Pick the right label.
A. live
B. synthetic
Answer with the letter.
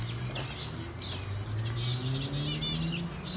A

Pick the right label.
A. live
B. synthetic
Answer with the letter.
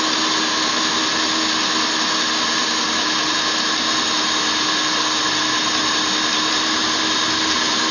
A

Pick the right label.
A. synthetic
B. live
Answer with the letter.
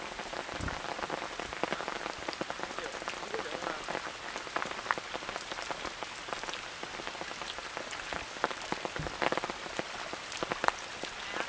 B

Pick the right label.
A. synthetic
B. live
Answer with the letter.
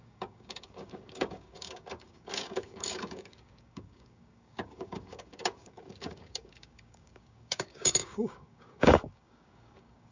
A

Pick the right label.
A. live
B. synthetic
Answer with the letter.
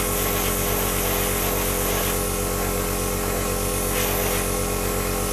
A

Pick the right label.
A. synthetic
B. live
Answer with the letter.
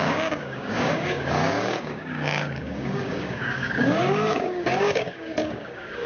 A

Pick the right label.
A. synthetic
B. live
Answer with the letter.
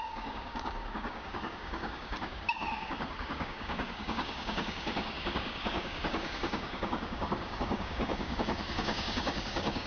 A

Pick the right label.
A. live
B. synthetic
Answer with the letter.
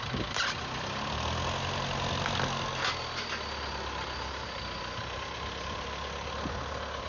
A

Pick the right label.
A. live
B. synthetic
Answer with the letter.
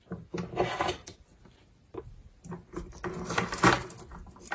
A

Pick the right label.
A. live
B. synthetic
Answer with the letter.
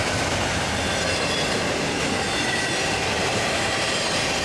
A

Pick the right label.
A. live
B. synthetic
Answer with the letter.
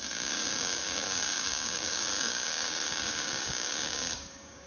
B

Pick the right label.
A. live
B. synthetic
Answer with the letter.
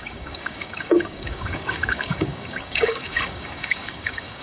B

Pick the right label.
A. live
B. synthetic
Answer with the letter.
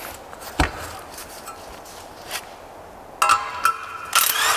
A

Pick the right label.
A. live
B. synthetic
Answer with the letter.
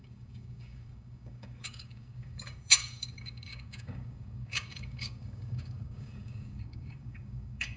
B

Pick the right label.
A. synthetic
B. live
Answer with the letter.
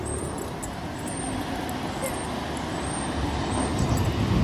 B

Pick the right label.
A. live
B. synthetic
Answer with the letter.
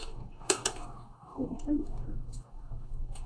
B